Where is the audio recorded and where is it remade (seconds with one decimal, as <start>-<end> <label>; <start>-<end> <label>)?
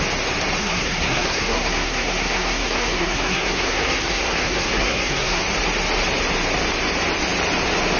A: 0.0-0.6 recorded; 0.6-5.4 remade; 5.4-8.0 recorded